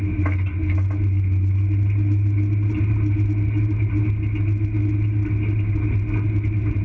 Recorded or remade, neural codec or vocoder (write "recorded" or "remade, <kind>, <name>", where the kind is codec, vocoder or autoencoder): recorded